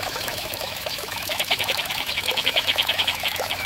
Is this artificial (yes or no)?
yes